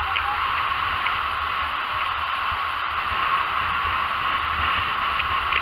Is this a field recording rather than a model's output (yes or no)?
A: no